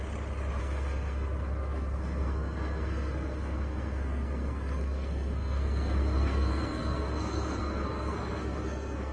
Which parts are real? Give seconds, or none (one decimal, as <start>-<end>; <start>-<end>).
0.0-0.6

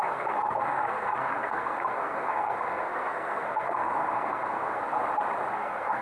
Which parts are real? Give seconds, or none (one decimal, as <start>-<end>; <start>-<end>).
5.0-5.5